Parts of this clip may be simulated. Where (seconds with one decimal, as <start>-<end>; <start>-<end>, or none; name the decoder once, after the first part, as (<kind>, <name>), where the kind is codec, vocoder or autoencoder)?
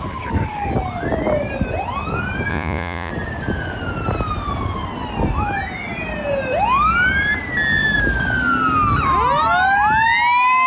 2.5-3.1 (vocoder, Vocos)